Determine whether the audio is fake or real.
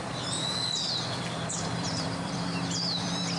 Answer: fake